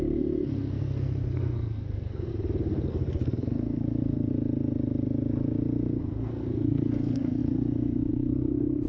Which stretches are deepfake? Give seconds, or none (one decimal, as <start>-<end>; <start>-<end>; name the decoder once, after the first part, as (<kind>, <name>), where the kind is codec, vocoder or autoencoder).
0.0-2.3 (codec, SNAC); 2.9-4.3; 6.0-8.9